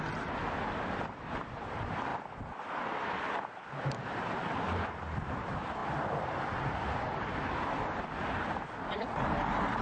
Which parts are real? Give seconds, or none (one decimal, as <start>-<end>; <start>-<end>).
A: 0.0-9.8